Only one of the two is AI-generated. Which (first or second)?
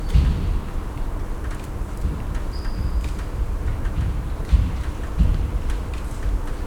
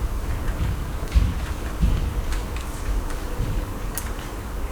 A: second